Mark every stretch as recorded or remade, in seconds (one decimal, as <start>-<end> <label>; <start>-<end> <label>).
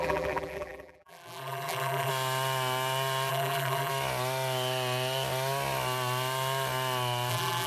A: 0.0-2.1 remade; 2.1-3.3 recorded; 3.3-3.9 remade; 3.9-7.3 recorded; 7.3-7.7 remade